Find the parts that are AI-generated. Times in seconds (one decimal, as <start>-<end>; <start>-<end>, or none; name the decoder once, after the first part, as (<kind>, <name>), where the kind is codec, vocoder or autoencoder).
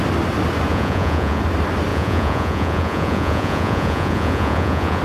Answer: 0.7-1.4 (vocoder, Vocos); 1.9-5.0